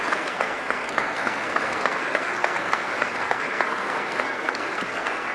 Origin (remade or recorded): remade